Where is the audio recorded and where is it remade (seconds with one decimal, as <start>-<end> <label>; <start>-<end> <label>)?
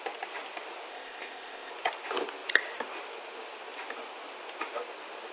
0.0-0.9 recorded; 0.9-1.7 remade; 1.7-5.3 recorded